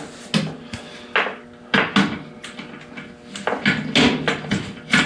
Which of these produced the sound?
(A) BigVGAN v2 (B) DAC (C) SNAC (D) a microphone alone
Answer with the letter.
D